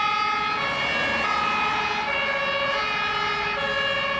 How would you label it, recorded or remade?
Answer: recorded